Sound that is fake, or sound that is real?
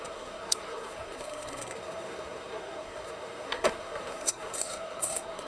fake